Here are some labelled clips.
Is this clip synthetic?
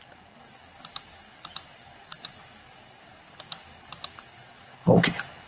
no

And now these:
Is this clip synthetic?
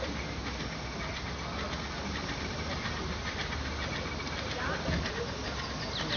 no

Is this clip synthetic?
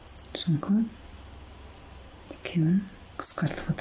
no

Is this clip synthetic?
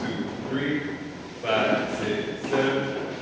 no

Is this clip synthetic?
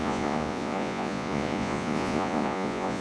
yes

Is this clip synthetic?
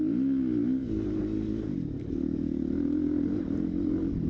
no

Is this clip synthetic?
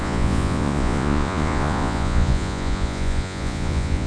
yes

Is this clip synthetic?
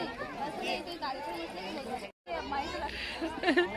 no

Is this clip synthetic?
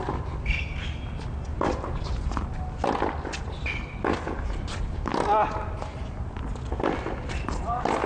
no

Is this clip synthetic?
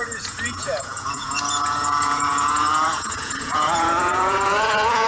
yes